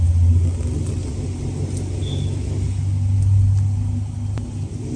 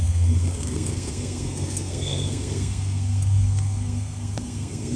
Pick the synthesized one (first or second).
second